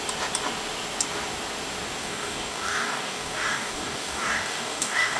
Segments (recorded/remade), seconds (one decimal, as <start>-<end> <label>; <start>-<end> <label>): 0.0-2.0 recorded; 2.0-5.2 remade

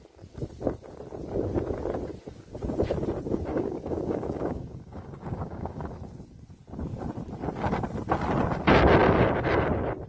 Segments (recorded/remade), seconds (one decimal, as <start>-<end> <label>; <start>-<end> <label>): 0.0-3.5 recorded; 3.5-5.9 remade; 5.9-10.1 recorded

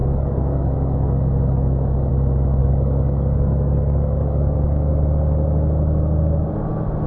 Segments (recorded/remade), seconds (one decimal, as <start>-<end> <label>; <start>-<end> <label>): 0.0-2.1 remade; 2.1-2.6 recorded; 2.6-4.9 remade; 4.9-7.1 recorded

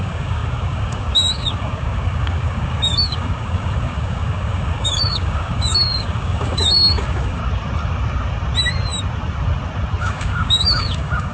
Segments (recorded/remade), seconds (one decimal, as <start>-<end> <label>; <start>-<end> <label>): 0.0-7.4 remade; 7.4-10.0 recorded; 10.0-11.3 remade

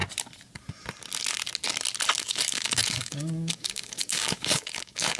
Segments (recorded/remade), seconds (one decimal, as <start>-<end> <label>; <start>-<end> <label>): 0.0-2.2 recorded; 2.2-5.2 remade

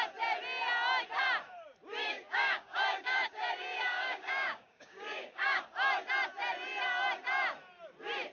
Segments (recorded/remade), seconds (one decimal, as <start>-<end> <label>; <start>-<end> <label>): 0.0-2.0 recorded; 2.0-5.6 remade; 5.6-8.3 recorded